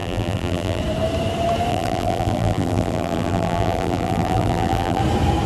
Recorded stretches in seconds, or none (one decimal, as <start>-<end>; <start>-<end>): 0.8-1.7; 5.0-5.5

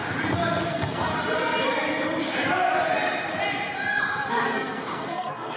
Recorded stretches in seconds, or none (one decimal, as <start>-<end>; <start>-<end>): 0.0-0.7; 1.1-4.3